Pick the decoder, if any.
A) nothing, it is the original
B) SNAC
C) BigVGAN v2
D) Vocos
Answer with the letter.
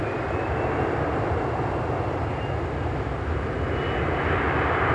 A